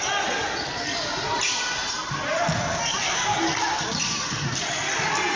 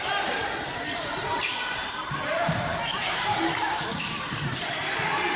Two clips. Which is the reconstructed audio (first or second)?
second